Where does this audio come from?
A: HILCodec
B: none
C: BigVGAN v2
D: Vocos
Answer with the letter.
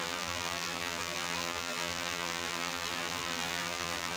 C